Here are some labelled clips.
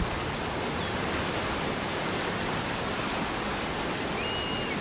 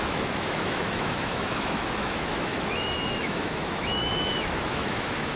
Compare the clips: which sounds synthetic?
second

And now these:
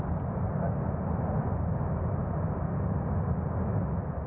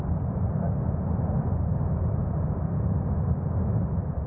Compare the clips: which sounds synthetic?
second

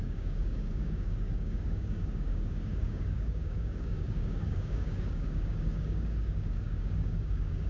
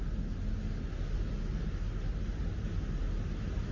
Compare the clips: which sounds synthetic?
first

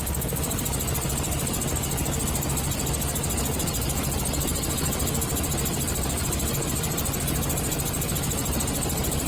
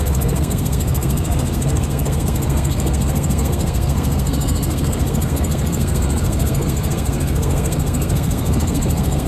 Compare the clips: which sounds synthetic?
second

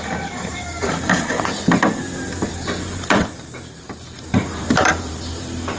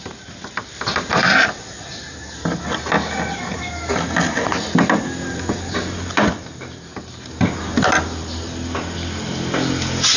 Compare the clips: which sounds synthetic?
first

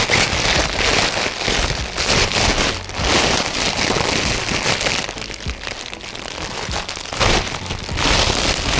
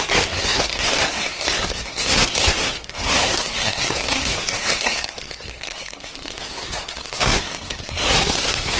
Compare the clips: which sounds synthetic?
second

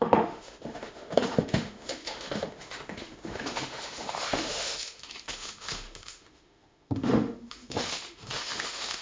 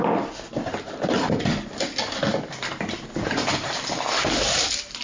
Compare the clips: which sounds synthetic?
first